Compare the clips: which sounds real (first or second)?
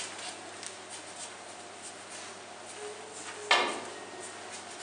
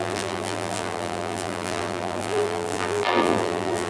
first